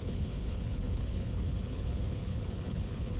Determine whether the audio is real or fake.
fake